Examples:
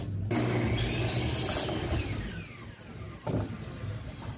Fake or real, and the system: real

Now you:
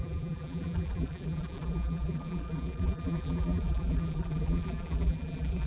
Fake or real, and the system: fake, vocoder, BigVGAN v2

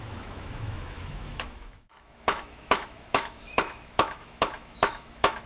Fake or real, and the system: fake, autoencoder, DAC-VAE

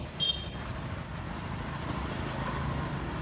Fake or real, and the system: fake, vocoder, BigVGAN v2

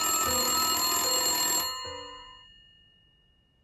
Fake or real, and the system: real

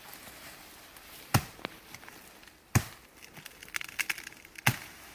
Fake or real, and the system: real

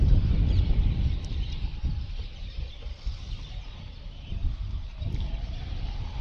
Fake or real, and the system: real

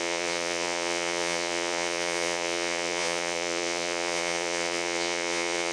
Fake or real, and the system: fake, vocoder, Vocos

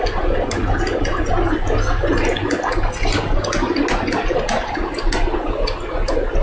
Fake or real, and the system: real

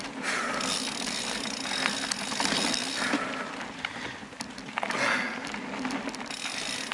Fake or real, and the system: real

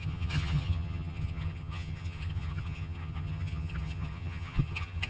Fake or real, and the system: fake, vocoder, HiFi-GAN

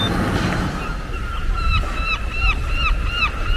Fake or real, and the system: real